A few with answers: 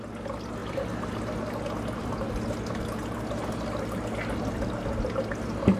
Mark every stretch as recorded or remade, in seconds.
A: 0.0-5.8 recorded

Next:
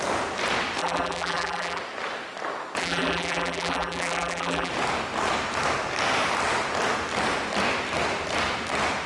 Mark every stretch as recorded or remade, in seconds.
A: 0.0-0.8 recorded; 0.8-1.8 remade; 1.8-2.8 recorded; 2.8-4.7 remade; 4.7-9.1 recorded

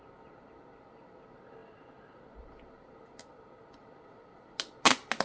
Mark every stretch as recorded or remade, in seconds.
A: 0.0-5.2 recorded